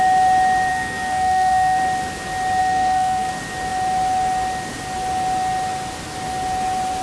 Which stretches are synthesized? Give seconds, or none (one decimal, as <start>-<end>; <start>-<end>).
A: 0.7-1.8; 2.6-3.3